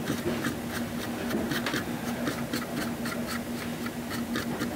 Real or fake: real